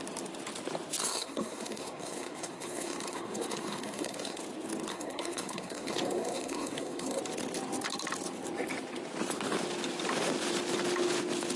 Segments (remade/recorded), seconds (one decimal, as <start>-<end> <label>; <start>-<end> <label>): 0.0-1.0 recorded; 1.0-4.4 remade; 4.4-4.9 recorded; 4.9-7.2 remade; 7.2-11.6 recorded